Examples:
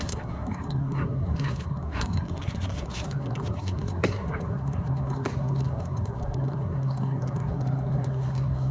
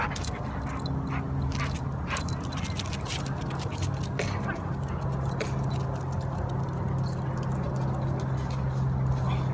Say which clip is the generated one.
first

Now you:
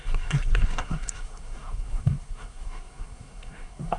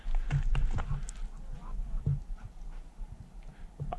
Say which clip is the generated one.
first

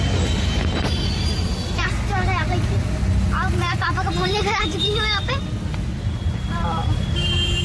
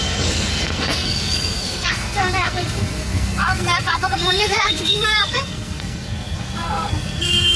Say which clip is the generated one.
second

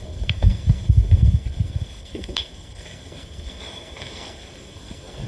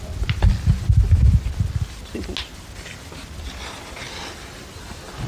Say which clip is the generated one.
first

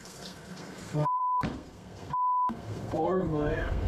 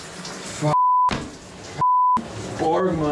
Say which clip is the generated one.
first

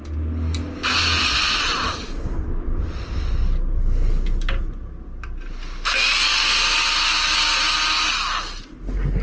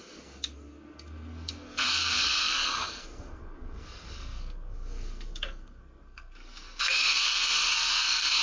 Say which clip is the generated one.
second